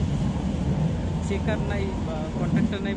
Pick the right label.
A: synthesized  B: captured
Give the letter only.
B